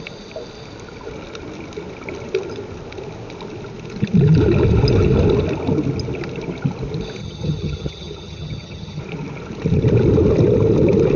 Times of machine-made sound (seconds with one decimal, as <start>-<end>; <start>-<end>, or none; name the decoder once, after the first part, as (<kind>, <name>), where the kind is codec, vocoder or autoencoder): 7.2-9.0 (vocoder, HiFi-GAN)